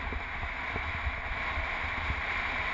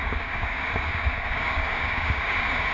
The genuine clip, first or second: first